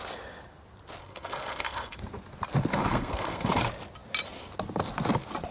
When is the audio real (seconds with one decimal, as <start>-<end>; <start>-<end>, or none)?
0.0-1.0; 2.0-2.7; 3.5-5.5